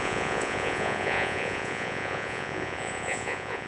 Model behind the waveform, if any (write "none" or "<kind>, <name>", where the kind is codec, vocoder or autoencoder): vocoder, Vocos